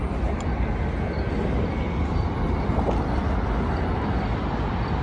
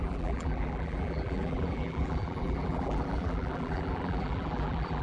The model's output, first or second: second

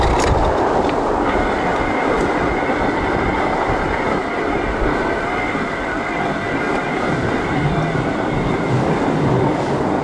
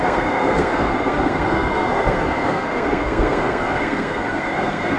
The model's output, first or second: second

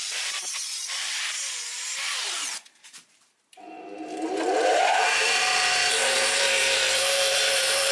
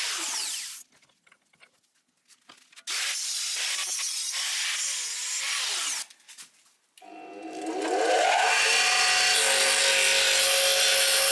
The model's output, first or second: first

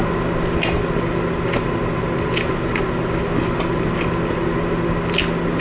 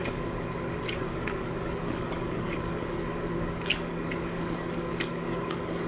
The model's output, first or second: second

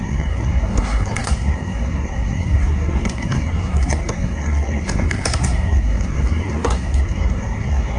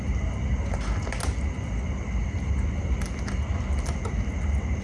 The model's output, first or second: first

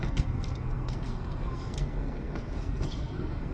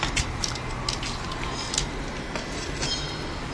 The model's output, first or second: first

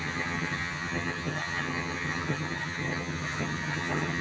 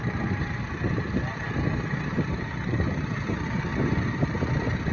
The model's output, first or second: first